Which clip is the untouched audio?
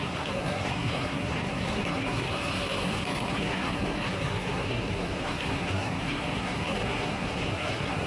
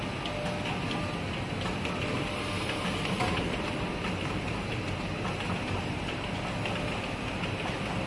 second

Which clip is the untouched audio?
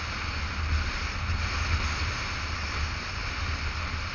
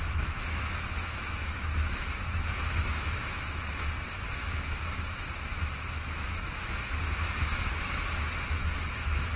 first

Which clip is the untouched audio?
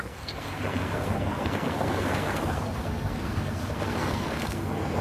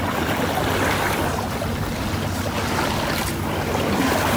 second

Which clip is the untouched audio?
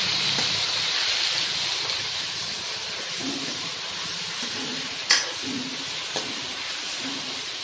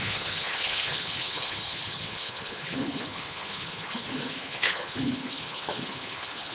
first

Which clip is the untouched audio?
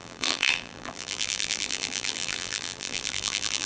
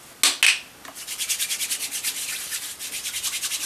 second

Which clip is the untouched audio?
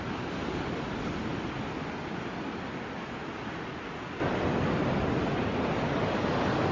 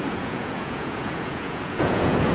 first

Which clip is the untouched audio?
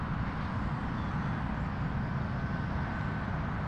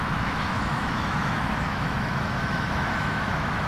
first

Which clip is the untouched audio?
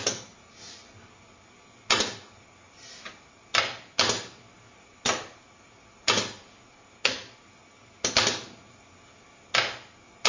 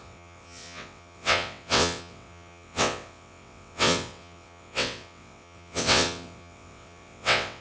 first